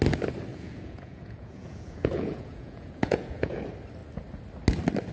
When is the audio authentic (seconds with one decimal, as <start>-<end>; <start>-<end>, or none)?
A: 0.0-0.5; 3.6-5.1